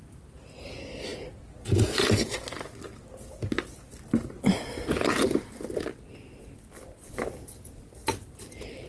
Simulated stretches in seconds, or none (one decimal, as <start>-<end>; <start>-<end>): 8.0-8.9